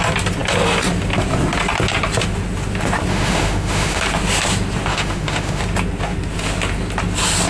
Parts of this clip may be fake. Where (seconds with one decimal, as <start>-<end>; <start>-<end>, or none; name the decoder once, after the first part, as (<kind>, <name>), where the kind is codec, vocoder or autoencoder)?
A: 3.1-4.0 (autoencoder, DAC-VAE); 4.9-5.6